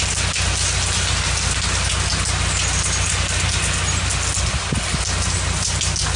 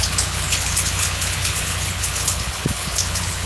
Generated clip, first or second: second